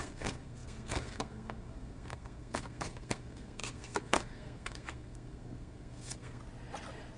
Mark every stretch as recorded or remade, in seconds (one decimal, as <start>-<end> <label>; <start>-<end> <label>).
0.0-6.4 remade; 6.4-7.2 recorded